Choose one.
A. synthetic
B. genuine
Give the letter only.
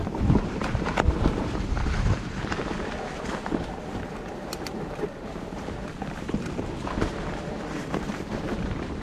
A